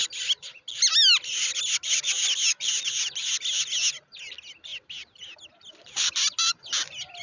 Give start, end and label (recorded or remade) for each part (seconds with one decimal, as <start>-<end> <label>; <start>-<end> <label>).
0.0-7.2 recorded